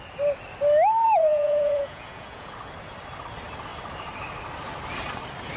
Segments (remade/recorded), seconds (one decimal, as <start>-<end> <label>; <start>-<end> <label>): 0.0-1.0 recorded; 1.0-2.5 remade; 2.5-5.6 recorded

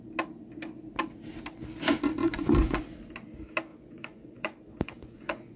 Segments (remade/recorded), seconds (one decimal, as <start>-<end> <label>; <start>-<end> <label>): 0.0-2.2 recorded; 2.2-2.8 remade; 2.8-3.7 recorded; 3.7-5.6 remade

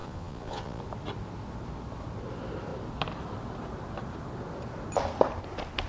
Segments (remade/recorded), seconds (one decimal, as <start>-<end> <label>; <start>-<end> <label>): 0.0-0.8 remade; 0.8-5.9 recorded

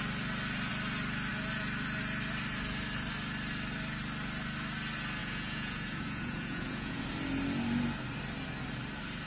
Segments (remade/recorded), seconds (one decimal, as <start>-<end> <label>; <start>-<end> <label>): 0.0-5.2 recorded; 5.2-7.0 remade; 7.0-9.3 recorded

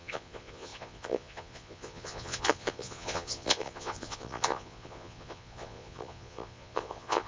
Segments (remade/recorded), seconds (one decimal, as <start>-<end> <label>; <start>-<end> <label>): 0.0-7.3 remade

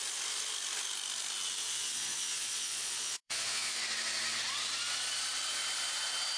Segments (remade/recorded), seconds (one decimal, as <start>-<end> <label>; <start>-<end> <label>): 0.0-1.6 recorded; 1.6-3.8 remade; 3.8-6.4 recorded